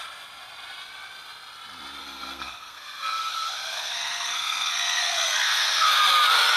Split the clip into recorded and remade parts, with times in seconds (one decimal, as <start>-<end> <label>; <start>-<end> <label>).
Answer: 0.0-2.0 recorded; 2.0-6.0 remade; 6.0-6.6 recorded